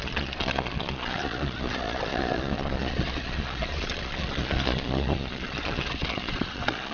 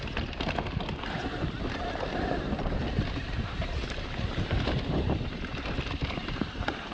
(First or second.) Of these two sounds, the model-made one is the first